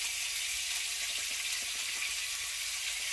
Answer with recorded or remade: recorded